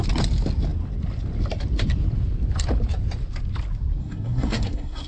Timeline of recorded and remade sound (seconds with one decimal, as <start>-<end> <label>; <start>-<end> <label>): 0.0-4.0 recorded; 4.0-5.1 remade